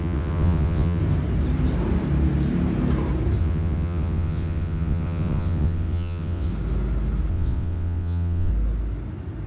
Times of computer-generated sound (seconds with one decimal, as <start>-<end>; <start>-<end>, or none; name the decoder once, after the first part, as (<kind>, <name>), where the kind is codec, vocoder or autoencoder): 0.0-1.0 (vocoder, WaveNeXt); 3.4-6.5; 7.3-8.5